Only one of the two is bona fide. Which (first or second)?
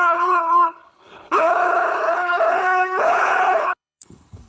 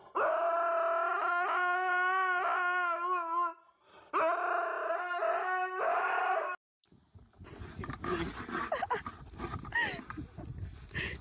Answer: second